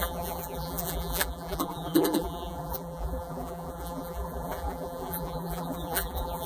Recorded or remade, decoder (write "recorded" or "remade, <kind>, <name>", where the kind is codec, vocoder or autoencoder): remade, vocoder, BigVGAN v2